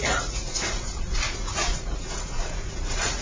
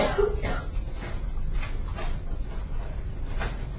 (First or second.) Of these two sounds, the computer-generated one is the first